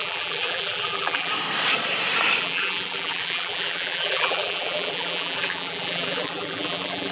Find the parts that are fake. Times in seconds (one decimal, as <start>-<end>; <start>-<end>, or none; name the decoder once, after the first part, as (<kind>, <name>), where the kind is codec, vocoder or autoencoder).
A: 0.0-1.3 (vocoder, BigVGAN v2); 2.4-7.1